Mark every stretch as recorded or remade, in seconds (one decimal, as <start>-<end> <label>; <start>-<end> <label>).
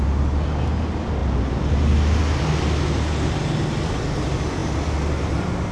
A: 0.0-5.7 recorded